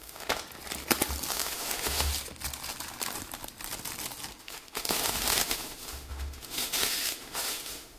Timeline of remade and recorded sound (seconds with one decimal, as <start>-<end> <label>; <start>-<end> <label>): 0.0-0.4 remade; 0.4-1.3 recorded; 1.3-2.1 remade; 2.1-4.4 recorded; 4.4-8.0 remade